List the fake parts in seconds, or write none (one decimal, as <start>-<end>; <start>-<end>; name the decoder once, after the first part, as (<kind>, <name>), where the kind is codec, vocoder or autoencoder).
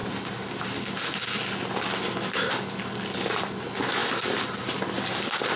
none